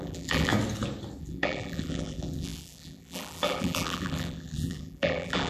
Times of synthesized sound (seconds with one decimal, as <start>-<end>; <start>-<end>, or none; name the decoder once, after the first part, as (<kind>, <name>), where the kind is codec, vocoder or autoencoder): 0.0-0.5 (vocoder, BigVGAN v2); 1.2-5.5